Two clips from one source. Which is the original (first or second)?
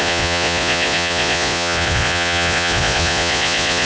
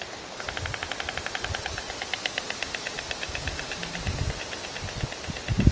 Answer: second